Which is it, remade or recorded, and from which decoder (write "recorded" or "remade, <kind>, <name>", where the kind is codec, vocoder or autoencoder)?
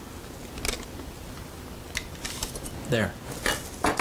recorded